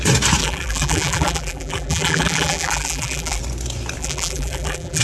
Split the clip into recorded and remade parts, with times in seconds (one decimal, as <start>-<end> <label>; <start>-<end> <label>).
0.0-0.4 recorded; 0.4-3.4 remade; 3.4-4.0 recorded; 4.0-5.0 remade